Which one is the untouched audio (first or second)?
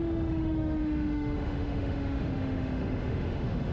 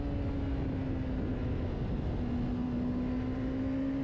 second